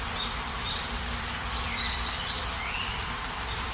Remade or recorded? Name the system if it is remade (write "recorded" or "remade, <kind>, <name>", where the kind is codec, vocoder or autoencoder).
remade, vocoder, BigVGAN v2